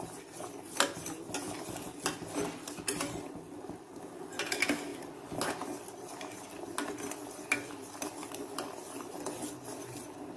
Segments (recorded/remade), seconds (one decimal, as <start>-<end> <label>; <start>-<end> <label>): 0.0-10.4 recorded